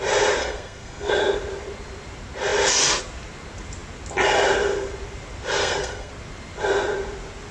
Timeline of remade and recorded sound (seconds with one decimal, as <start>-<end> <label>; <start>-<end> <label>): 0.0-0.4 recorded; 0.4-1.1 remade; 1.1-5.6 recorded; 5.6-6.1 remade; 6.1-7.5 recorded